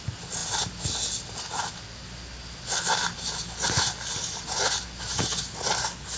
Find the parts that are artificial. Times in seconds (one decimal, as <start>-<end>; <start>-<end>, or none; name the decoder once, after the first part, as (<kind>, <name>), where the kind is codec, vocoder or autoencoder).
none